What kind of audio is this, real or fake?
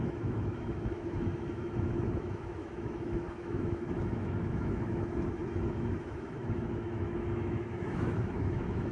fake